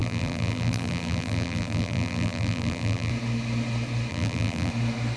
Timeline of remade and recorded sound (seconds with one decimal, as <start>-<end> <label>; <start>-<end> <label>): 0.0-3.1 remade; 3.1-4.1 recorded; 4.1-4.7 remade; 4.7-5.2 recorded